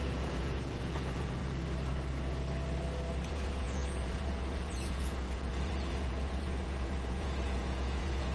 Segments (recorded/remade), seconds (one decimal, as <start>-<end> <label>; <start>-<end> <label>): 0.0-1.4 remade; 1.4-3.3 recorded; 3.3-8.3 remade